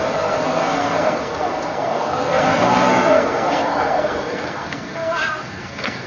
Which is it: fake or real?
fake